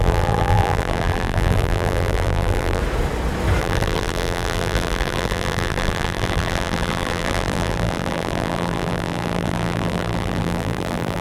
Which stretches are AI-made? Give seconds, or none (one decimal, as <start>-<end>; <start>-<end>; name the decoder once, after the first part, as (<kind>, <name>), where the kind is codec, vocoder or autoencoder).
0.0-2.8 (vocoder, BigVGAN v2); 3.6-11.2